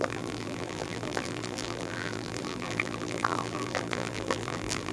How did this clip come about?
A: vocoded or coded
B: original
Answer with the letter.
A